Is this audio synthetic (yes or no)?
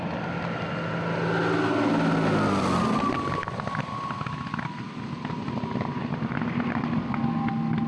no